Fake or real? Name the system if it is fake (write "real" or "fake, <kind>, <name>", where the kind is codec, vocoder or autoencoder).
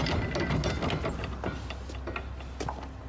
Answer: real